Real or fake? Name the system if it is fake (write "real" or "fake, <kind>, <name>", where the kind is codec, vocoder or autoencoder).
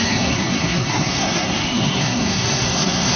fake, codec, SNAC